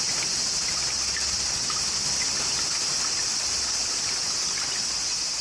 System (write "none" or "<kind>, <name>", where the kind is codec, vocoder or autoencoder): none